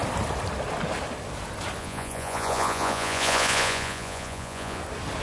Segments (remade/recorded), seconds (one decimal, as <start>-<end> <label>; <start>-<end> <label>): 0.0-1.8 recorded; 1.8-4.8 remade; 4.8-5.2 recorded